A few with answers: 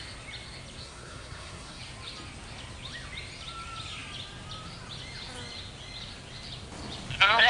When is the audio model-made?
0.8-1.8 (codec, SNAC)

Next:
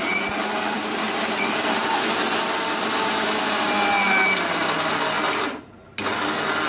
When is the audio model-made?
none

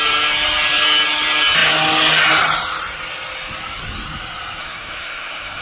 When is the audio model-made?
4.6-5.6 (codec, SNAC)

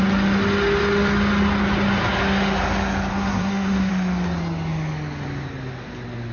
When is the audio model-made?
3.1-3.9 (codec, SNAC)